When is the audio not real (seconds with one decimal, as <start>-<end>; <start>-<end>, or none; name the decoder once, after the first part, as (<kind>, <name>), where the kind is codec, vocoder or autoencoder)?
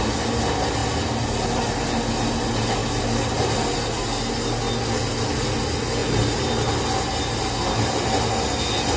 none